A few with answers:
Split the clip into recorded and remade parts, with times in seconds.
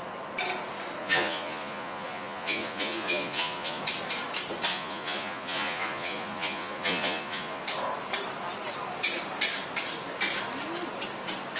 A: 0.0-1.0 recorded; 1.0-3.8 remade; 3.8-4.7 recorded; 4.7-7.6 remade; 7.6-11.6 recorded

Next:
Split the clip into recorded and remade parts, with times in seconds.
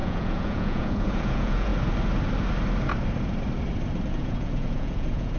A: 0.0-1.7 remade; 1.7-4.1 recorded; 4.1-5.4 remade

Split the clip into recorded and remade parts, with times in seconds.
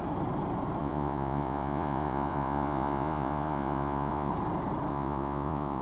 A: 0.0-0.8 recorded; 0.8-4.3 remade; 4.3-4.9 recorded; 4.9-5.8 remade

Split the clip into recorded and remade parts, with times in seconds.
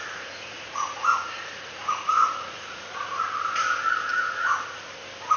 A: 0.0-3.2 remade; 3.2-4.1 recorded; 4.1-5.0 remade; 5.0-5.4 recorded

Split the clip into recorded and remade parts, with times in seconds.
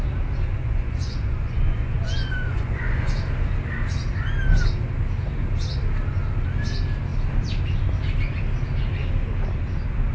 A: 0.0-0.6 recorded; 0.6-3.1 remade; 3.1-10.1 recorded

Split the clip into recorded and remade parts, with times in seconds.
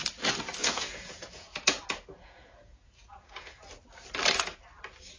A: 0.0-0.6 recorded; 0.6-3.7 remade; 3.7-5.2 recorded